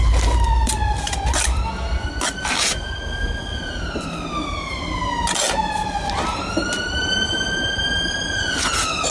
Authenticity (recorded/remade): recorded